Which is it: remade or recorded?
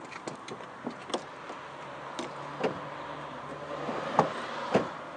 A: recorded